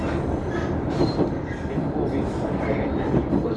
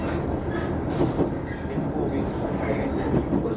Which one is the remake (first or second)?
first